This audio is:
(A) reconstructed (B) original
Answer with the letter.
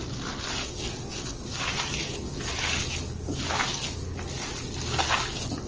B